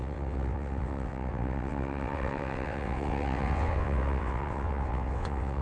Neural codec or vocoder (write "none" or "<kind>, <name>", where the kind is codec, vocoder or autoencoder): vocoder, WaveNeXt